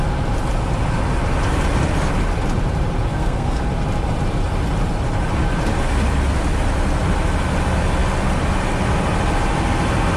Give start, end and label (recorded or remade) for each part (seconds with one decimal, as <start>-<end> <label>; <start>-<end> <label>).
0.0-3.1 recorded; 3.1-3.6 remade; 3.6-10.2 recorded